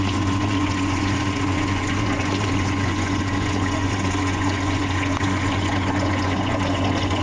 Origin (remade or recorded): remade